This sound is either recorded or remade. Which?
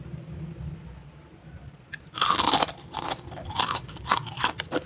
recorded